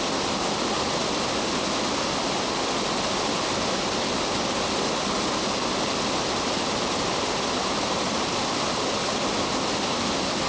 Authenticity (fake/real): real